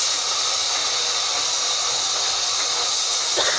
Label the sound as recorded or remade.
recorded